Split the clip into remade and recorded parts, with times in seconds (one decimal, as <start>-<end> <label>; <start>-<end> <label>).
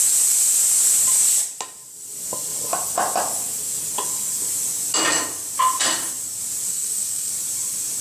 0.0-6.7 recorded; 6.7-7.3 remade; 7.3-8.0 recorded